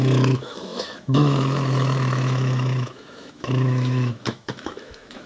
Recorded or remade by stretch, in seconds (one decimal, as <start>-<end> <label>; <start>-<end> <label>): 0.0-5.3 remade